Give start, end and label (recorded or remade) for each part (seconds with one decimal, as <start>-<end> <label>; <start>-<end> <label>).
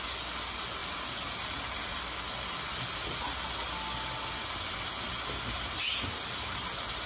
0.0-7.1 recorded